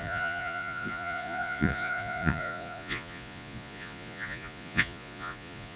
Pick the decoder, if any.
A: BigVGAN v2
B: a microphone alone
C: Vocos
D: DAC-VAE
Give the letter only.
C